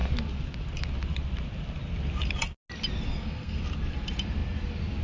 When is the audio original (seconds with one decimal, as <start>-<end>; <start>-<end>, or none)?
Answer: 0.0-3.1; 3.6-5.0